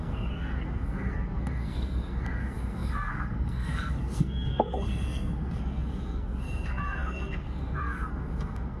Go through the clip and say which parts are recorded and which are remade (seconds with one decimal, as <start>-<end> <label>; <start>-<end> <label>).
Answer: 0.0-8.8 remade